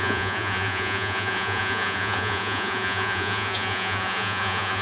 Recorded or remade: remade